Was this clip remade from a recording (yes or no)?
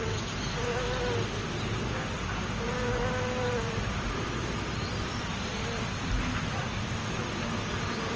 no